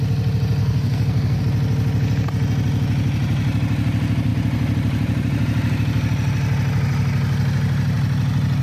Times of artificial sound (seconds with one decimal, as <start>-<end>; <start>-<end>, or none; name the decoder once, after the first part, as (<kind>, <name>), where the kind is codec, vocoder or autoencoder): 0.6-1.4 (codec, SNAC)